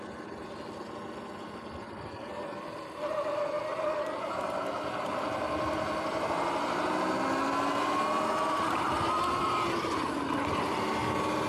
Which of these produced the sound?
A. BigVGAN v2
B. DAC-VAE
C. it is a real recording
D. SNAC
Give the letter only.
C